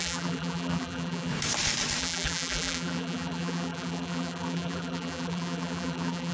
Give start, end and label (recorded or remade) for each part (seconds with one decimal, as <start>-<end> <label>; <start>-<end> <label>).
0.0-1.3 remade; 1.3-2.0 recorded; 2.0-6.3 remade